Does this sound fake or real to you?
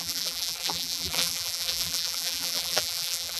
fake